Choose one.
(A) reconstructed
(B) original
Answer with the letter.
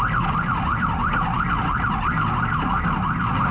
B